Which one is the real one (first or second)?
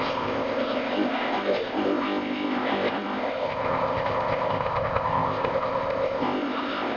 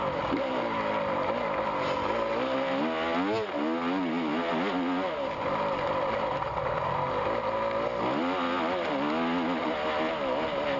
second